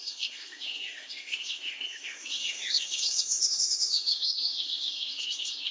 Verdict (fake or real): fake